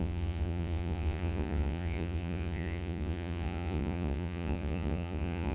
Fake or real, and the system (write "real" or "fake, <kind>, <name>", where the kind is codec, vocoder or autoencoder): fake, vocoder, Vocos